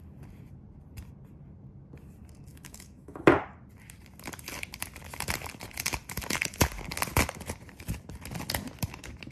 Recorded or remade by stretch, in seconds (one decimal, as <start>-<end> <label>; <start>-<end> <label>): 0.0-2.5 recorded; 2.5-3.2 remade; 3.2-9.3 recorded